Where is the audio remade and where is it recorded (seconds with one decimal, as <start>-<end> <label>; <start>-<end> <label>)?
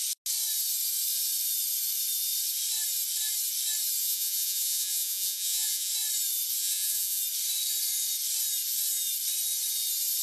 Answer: 0.0-4.0 recorded; 4.0-5.9 remade; 5.9-6.6 recorded; 6.6-7.2 remade; 7.2-10.2 recorded